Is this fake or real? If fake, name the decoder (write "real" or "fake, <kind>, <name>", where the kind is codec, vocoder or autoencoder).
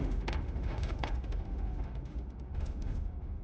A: fake, autoencoder, DAC-VAE